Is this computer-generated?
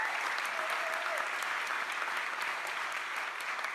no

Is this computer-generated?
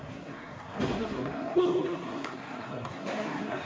yes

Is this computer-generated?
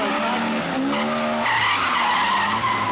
no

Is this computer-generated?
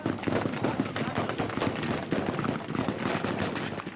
no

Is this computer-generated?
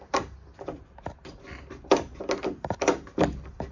no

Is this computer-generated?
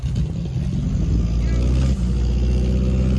no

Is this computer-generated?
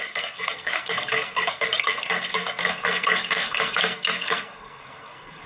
yes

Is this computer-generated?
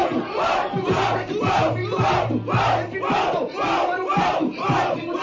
no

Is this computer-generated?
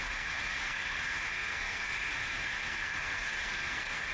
yes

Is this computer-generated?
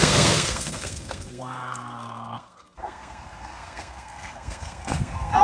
yes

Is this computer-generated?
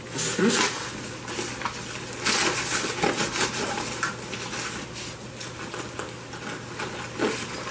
no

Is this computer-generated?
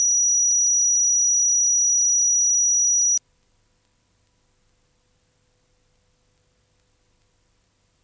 no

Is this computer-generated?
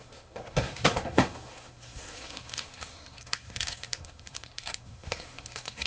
yes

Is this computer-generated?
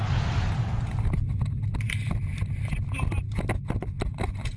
no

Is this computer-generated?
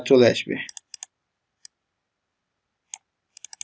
no